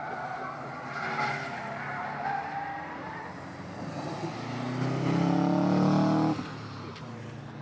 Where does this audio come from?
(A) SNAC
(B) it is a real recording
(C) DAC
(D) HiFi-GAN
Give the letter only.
B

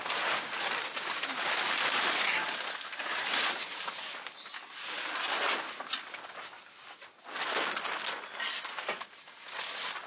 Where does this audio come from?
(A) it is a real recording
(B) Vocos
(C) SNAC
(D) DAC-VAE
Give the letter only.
A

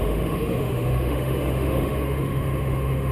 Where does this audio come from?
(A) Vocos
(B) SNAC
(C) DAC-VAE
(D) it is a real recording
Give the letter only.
C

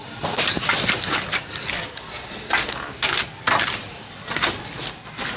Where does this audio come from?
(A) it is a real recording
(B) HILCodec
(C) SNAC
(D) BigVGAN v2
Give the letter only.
A